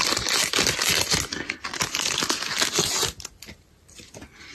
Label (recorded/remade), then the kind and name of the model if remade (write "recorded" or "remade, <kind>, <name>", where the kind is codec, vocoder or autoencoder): recorded